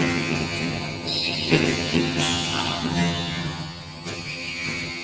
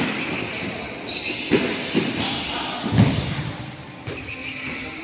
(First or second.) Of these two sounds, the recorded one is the second